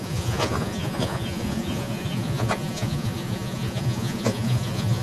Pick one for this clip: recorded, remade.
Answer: remade